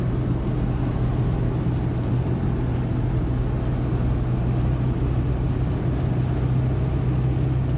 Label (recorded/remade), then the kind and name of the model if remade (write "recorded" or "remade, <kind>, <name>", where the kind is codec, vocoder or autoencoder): recorded